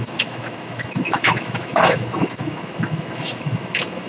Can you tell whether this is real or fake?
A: fake